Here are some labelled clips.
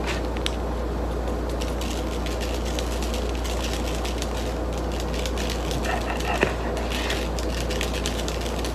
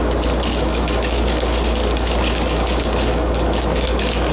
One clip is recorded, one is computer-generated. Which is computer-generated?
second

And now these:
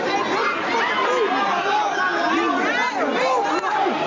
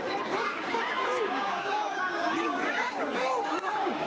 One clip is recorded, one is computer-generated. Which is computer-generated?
second